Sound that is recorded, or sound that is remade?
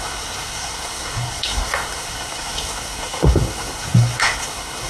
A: remade